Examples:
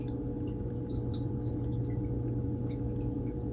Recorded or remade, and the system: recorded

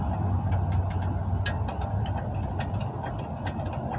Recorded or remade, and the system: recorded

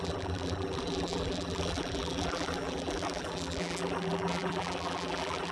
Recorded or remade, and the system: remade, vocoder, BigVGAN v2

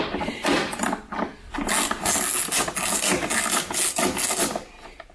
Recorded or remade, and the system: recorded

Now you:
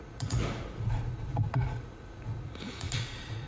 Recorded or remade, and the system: remade, vocoder, Vocos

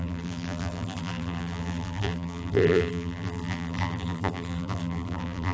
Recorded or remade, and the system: remade, vocoder, BigVGAN v2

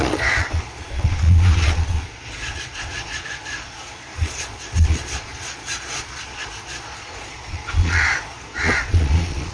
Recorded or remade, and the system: remade, vocoder, Vocos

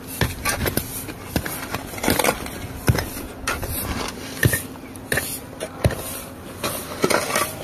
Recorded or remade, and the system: recorded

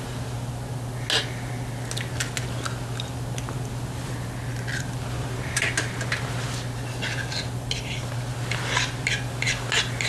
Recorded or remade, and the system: recorded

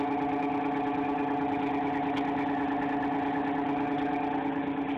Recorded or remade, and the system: recorded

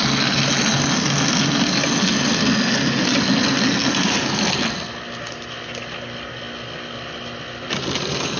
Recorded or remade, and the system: recorded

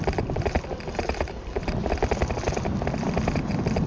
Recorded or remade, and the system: recorded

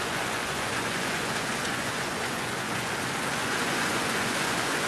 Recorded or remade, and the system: remade, vocoder, Vocos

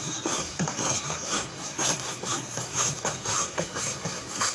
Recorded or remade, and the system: remade, codec, SNAC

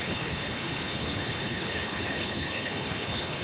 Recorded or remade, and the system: remade, codec, HILCodec